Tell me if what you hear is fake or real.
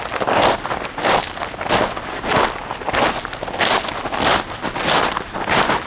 real